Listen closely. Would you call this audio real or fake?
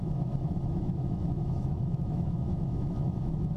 fake